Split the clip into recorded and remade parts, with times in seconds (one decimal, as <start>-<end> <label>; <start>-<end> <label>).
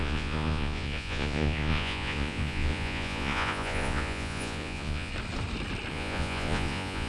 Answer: 0.0-5.1 remade; 5.1-5.9 recorded; 5.9-7.1 remade